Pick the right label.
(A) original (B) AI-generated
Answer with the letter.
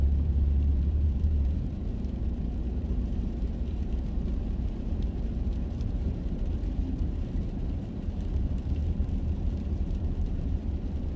B